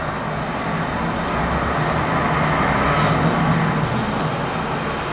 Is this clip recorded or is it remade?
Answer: recorded